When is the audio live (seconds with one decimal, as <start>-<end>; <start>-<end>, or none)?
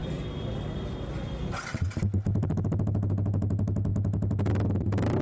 0.0-5.2